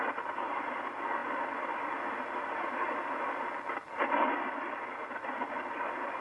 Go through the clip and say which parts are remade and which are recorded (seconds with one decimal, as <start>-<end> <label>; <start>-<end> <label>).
0.0-6.2 recorded